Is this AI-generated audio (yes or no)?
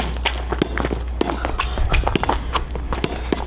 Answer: no